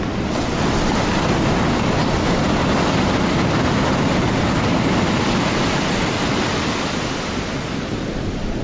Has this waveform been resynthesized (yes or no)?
no